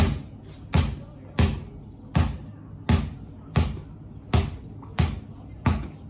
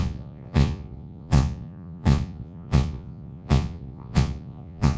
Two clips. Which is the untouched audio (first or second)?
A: first